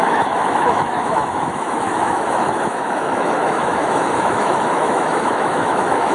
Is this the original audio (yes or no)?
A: no